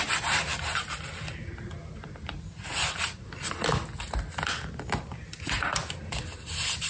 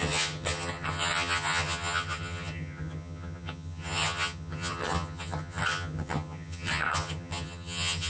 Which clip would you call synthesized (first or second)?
second